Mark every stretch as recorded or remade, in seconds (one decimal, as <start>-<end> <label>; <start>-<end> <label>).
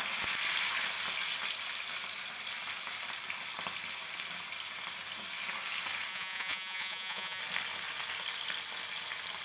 0.0-6.1 recorded; 6.1-7.4 remade; 7.4-9.4 recorded